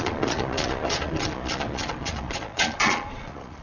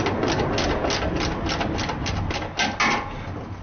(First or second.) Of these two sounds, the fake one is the first